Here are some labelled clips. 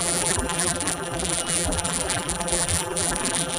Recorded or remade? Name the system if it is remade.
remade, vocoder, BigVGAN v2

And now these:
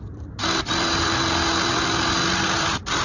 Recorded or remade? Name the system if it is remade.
recorded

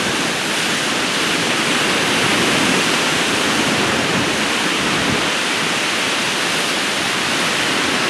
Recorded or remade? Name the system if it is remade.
remade, vocoder, BigVGAN v2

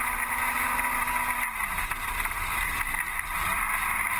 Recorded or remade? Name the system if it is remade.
recorded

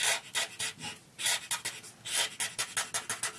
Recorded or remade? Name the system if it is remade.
recorded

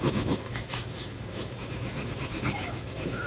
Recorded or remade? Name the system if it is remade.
remade, autoencoder, DAC-VAE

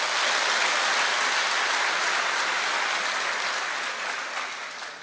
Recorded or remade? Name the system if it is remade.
recorded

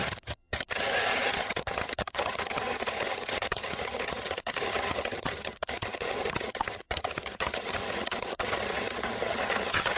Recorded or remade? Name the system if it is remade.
remade, vocoder, HiFi-GAN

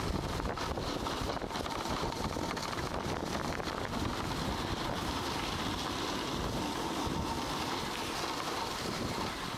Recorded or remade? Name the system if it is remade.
recorded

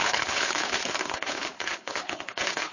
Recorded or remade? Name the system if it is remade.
remade, codec, HILCodec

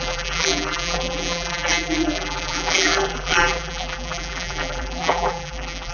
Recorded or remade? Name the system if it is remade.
remade, vocoder, BigVGAN v2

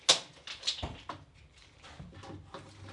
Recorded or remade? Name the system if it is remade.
recorded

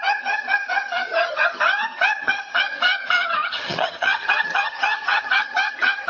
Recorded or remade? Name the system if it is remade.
remade, vocoder, HiFi-GAN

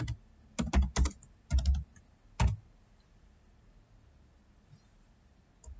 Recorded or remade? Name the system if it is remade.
recorded